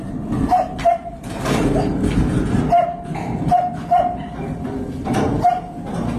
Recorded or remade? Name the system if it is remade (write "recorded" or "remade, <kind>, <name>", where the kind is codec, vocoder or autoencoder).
recorded